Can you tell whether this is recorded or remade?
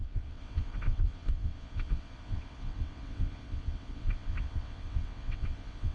remade